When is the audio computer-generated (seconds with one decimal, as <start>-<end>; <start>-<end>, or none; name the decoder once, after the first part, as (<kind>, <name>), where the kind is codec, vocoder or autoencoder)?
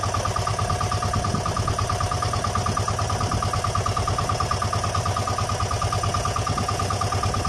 none